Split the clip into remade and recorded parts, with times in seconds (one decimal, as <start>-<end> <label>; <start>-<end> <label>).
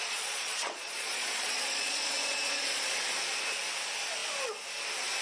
0.0-2.8 remade; 2.8-5.2 recorded